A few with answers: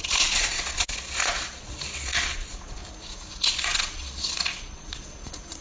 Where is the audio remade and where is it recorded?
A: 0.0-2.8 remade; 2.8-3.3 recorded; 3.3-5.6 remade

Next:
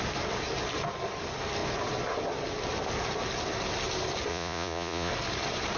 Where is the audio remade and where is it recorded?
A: 0.0-4.3 recorded; 4.3-5.1 remade; 5.1-5.8 recorded

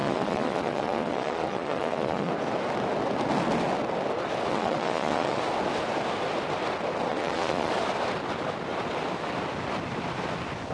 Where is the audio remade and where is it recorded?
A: 0.0-2.3 remade; 2.3-4.5 recorded; 4.5-5.4 remade; 5.4-7.1 recorded; 7.1-7.7 remade; 7.7-10.7 recorded